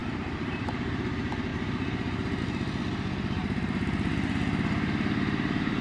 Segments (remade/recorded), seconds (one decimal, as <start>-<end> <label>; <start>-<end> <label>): 0.0-1.0 remade; 1.0-1.5 recorded; 1.5-2.4 remade; 2.4-3.4 recorded; 3.4-5.8 remade